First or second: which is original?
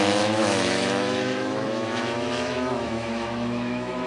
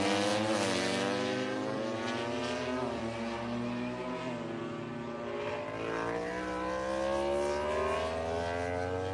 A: second